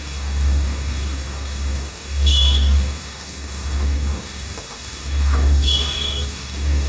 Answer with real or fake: fake